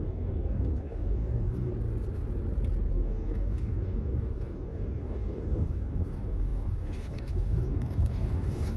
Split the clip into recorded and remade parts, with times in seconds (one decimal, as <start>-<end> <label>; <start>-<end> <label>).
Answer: 0.0-1.7 remade; 1.7-2.9 recorded; 2.9-8.8 remade